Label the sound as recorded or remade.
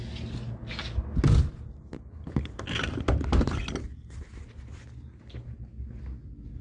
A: recorded